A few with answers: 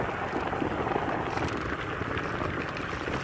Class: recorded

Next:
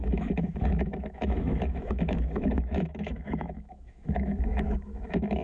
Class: remade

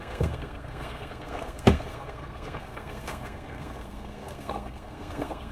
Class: remade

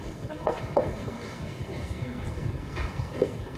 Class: remade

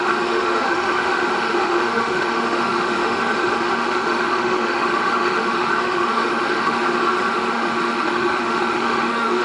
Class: remade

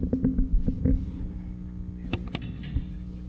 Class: recorded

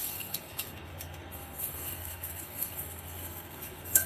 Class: remade